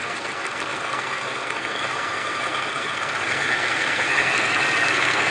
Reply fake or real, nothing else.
fake